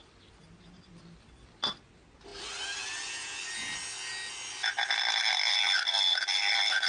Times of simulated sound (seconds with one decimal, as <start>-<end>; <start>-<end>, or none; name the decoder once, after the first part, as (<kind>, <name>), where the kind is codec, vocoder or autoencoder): none